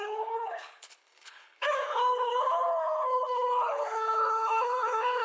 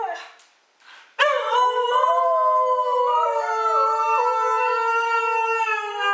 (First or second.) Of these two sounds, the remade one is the first